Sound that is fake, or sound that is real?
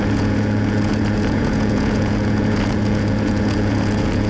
fake